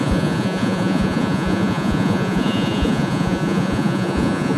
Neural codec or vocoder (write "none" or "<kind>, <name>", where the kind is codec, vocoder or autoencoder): vocoder, Vocos